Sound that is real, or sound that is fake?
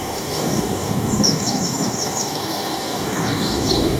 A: fake